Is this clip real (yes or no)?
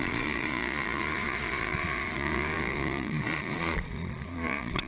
no